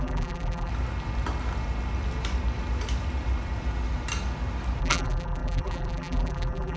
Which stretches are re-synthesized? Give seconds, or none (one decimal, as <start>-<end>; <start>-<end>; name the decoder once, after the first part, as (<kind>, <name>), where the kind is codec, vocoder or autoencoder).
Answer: 0.0-0.7 (vocoder, BigVGAN v2); 4.8-6.8